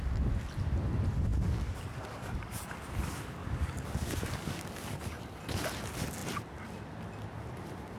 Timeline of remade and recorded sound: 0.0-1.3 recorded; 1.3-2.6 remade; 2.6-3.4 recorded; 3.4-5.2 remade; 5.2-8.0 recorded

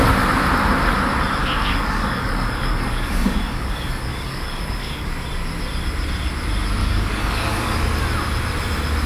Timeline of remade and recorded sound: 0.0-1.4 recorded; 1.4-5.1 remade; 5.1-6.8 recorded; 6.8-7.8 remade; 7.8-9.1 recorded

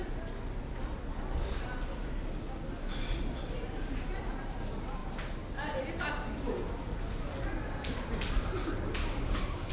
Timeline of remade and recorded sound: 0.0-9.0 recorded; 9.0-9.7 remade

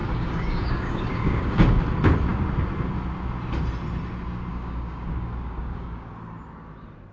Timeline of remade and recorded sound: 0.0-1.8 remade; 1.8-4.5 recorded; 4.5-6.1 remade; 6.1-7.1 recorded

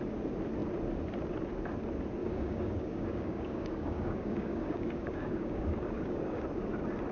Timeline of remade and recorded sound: 0.0-2.2 recorded; 2.2-6.4 remade; 6.4-7.1 recorded

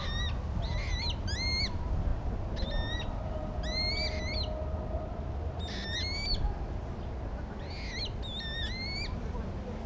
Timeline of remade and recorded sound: 0.0-9.9 recorded

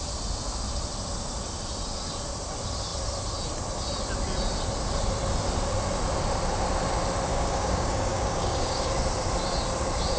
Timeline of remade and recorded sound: 0.0-7.3 recorded; 7.3-8.9 remade; 8.9-10.2 recorded

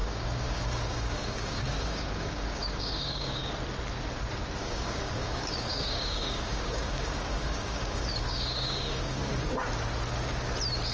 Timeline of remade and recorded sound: 0.0-3.5 remade; 3.5-4.6 recorded; 4.6-9.4 remade; 9.4-10.9 recorded